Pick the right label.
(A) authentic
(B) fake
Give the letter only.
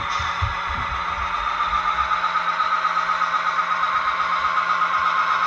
A